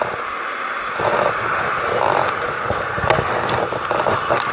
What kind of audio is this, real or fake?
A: real